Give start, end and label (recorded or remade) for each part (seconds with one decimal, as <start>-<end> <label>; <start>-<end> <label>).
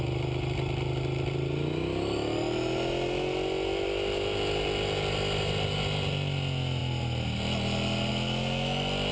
0.0-9.1 recorded